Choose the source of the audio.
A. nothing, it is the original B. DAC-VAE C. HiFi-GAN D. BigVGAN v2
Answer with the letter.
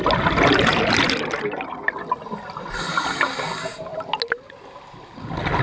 A